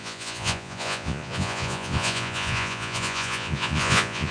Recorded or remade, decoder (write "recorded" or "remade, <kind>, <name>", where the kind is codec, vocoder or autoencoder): remade, vocoder, Vocos